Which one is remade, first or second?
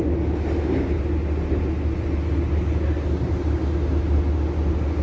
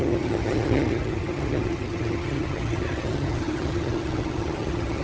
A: second